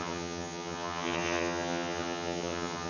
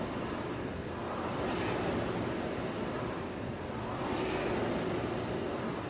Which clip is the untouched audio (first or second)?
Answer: second